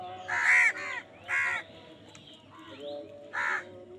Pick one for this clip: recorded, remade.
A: recorded